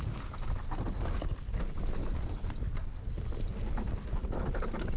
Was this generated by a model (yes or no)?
no